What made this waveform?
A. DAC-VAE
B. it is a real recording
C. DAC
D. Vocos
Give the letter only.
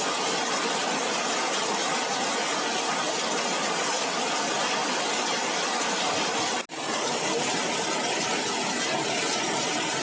B